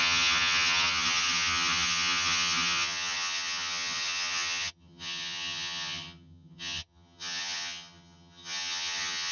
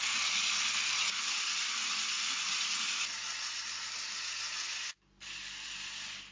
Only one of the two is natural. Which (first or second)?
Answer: second